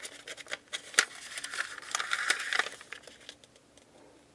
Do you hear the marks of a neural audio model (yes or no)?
no